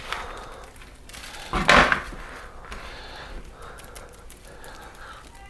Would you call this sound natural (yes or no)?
yes